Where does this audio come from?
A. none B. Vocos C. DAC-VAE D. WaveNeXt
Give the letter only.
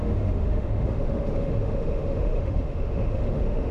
C